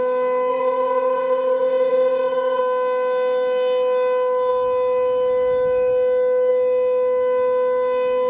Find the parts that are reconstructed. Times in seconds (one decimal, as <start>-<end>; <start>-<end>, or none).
0.5-2.6